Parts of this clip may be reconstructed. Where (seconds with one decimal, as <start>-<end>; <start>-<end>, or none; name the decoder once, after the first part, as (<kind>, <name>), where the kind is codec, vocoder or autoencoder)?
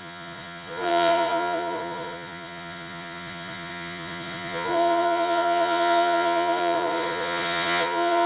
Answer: 0.0-8.3 (vocoder, Vocos)